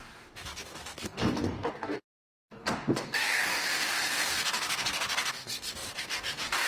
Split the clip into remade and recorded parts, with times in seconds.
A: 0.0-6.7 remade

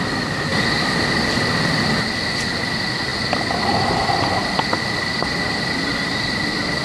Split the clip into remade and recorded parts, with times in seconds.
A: 0.0-6.8 recorded

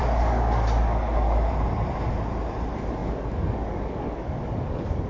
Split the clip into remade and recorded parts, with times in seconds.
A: 0.0-1.5 remade; 1.5-3.0 recorded; 3.0-5.1 remade

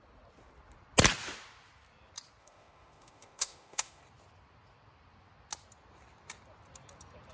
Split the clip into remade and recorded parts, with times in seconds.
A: 0.0-2.4 recorded; 2.4-4.0 remade; 4.0-7.3 recorded